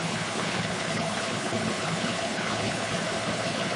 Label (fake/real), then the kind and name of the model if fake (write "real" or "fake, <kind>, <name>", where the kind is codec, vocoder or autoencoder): fake, codec, HILCodec